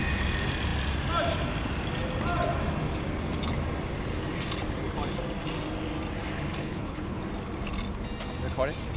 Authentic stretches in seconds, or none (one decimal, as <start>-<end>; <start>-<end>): 0.0-6.6; 7.2-9.0